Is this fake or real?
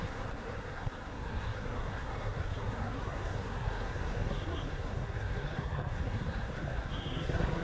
fake